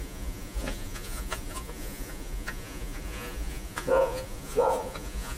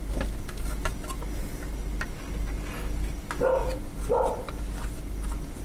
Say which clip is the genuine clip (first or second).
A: second